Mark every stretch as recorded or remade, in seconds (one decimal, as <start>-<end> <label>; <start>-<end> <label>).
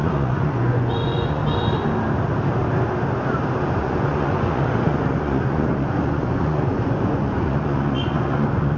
0.0-1.4 remade; 1.4-3.8 recorded; 3.8-8.8 remade